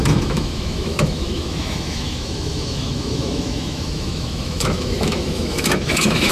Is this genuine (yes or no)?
no